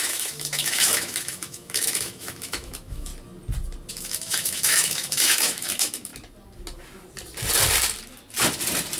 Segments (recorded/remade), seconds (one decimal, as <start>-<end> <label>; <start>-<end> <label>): 0.0-3.1 remade; 3.1-3.9 recorded; 3.9-6.1 remade; 6.1-9.0 recorded